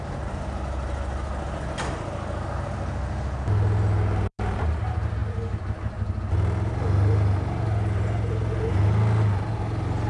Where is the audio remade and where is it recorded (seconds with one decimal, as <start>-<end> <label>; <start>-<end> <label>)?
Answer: 0.0-10.1 recorded